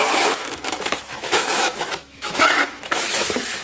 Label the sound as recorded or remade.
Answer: remade